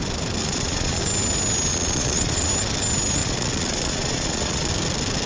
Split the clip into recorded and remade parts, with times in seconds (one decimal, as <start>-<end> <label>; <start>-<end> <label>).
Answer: 0.0-0.4 recorded; 0.4-1.0 remade; 1.0-1.7 recorded; 1.7-2.5 remade; 2.5-3.2 recorded; 3.2-4.7 remade; 4.7-5.3 recorded